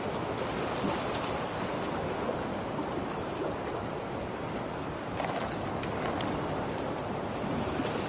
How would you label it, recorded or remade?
remade